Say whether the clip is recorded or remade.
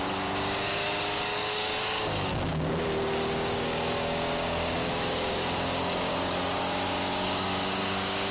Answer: remade